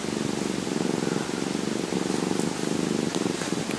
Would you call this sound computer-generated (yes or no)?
no